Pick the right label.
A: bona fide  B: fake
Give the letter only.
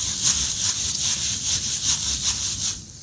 A